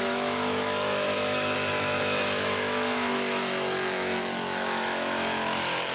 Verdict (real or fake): fake